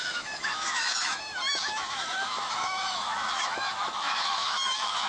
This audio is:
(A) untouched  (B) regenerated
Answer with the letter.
B